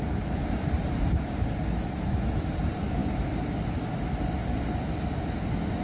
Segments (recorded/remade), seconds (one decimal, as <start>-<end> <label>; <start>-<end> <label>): 0.0-5.8 recorded